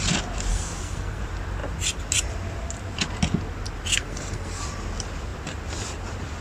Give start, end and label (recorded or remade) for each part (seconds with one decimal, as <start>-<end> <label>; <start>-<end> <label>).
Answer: 0.0-0.5 recorded; 0.5-1.2 remade; 1.2-3.9 recorded; 3.9-4.6 remade; 4.6-6.4 recorded